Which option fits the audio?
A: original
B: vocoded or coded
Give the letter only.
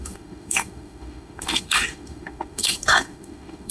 B